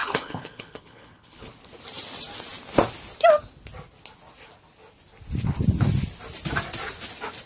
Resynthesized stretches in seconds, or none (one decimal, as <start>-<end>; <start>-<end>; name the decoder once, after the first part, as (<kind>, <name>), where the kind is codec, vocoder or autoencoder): 0.0-1.5 (codec, HILCodec)